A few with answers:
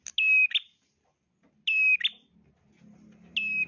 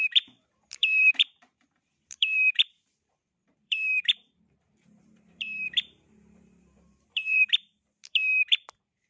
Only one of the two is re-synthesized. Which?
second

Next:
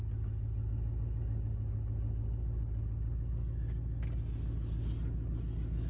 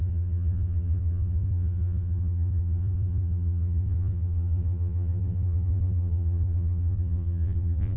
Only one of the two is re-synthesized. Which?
second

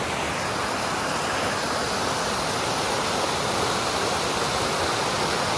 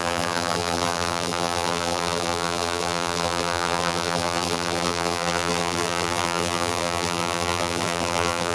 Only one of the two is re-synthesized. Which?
second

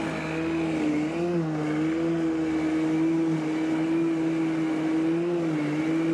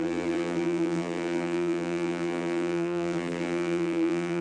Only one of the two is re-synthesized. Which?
second